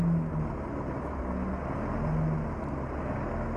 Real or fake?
real